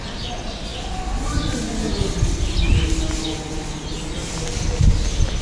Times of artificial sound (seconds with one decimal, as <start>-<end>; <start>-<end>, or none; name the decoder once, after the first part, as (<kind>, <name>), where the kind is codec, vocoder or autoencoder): none